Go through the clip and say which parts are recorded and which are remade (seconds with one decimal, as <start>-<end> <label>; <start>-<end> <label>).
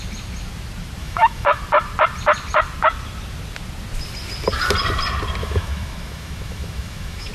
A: 0.0-1.0 recorded; 1.0-1.6 remade; 1.6-5.4 recorded; 5.4-7.3 remade